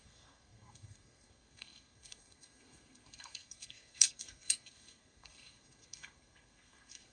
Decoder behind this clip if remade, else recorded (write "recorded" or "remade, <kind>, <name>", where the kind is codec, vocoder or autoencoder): remade, codec, SNAC